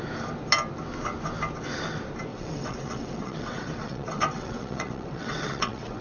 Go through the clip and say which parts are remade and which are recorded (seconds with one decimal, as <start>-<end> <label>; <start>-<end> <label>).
0.0-2.3 recorded; 2.3-6.0 remade